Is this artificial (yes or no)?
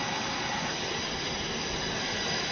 no